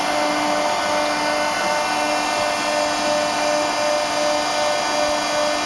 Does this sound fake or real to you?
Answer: real